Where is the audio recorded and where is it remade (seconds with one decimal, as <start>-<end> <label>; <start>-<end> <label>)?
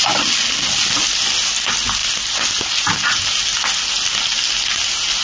0.0-5.2 recorded